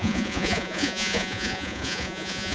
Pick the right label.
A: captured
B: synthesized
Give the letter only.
B